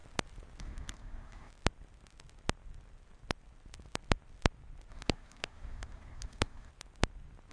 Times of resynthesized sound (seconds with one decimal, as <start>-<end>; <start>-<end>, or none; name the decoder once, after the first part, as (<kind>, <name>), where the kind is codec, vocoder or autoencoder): 0.6-1.5 (codec, SNAC); 4.9-6.7